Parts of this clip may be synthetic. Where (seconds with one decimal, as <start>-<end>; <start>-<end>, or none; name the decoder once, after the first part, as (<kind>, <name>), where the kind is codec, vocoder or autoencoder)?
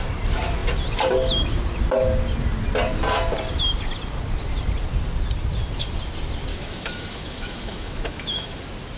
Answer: 6.5-8.6 (autoencoder, DAC-VAE)